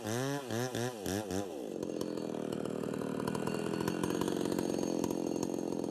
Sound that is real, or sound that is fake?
real